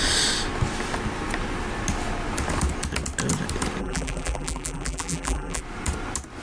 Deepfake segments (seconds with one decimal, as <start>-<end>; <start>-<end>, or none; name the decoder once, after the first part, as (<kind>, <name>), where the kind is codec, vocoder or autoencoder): 3.8-5.6 (vocoder, BigVGAN v2)